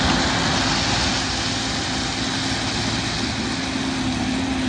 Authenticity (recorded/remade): recorded